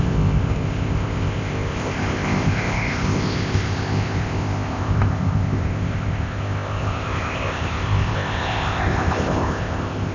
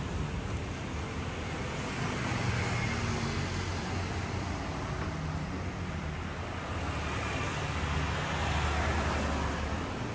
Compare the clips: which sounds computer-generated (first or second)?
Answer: first